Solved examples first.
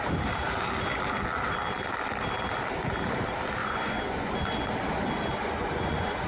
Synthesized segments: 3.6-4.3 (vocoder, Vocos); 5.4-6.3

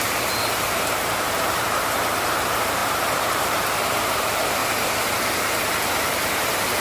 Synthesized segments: 0.0-4.6 (vocoder, BigVGAN v2); 5.4-6.8